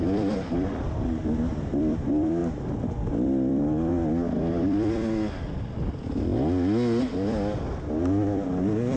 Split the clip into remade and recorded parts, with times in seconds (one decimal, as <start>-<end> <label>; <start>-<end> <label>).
0.0-1.2 remade; 1.2-1.7 recorded; 1.7-2.4 remade; 2.4-3.1 recorded; 3.1-3.9 remade; 3.9-4.4 recorded; 4.4-6.3 remade; 6.3-7.0 recorded; 7.0-9.0 remade

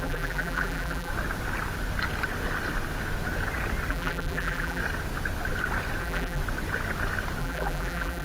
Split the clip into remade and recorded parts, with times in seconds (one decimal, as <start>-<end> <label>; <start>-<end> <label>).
0.0-1.1 remade; 1.1-3.9 recorded; 3.9-4.8 remade; 4.8-6.0 recorded; 6.0-6.4 remade; 6.4-7.4 recorded; 7.4-8.2 remade

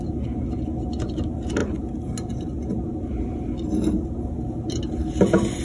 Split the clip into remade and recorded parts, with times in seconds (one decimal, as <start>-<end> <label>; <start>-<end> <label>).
0.0-5.6 recorded

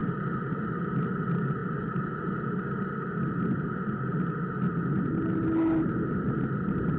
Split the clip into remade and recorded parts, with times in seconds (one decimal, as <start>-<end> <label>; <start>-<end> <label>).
0.0-0.8 remade; 0.8-7.0 recorded

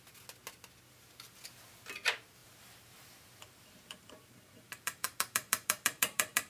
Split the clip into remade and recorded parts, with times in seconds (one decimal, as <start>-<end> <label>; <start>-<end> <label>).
0.0-2.4 recorded; 2.4-6.5 remade